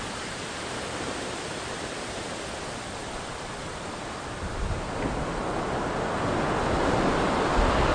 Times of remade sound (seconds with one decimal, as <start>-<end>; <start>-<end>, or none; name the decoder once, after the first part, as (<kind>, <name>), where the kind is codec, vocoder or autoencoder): none